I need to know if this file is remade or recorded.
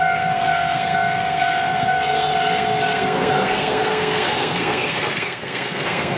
remade